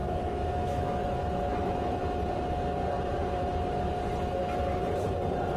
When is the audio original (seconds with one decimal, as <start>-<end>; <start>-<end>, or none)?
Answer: 2.0-5.6